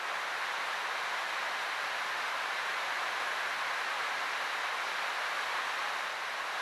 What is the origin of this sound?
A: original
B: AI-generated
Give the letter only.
A